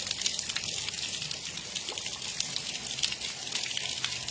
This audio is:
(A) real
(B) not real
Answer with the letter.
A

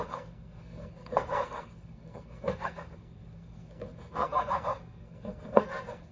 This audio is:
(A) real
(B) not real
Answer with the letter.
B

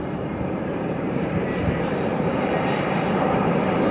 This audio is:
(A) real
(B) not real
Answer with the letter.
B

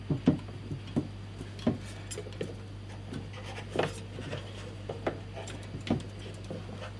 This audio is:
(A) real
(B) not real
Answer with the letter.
A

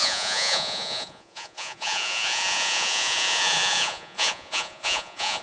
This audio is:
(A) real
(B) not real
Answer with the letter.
B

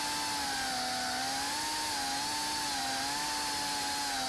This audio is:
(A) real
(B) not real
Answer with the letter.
A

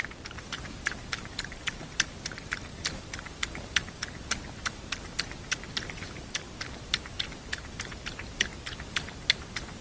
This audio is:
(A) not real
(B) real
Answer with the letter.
B